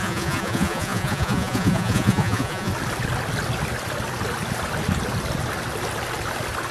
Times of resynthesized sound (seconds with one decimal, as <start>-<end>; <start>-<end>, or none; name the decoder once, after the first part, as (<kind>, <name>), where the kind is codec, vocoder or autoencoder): 0.0-2.7 (vocoder, Vocos)